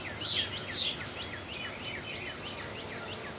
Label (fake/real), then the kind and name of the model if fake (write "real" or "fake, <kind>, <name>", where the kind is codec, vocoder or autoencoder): real